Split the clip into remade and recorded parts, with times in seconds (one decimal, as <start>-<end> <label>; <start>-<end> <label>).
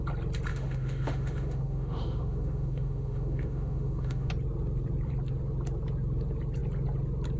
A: 0.0-0.5 recorded; 0.5-4.3 remade; 4.3-7.4 recorded